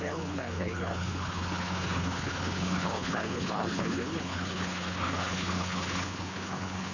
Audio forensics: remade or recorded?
remade